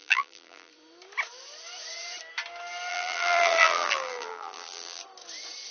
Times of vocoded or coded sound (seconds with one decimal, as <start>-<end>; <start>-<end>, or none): 0.0-0.7; 2.9-5.0

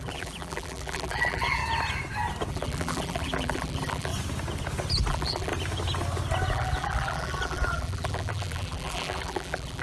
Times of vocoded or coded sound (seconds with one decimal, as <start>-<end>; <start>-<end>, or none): 0.0-1.6; 2.5-4.1; 5.1-5.5; 6.5-9.8